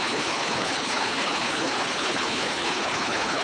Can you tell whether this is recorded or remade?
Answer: remade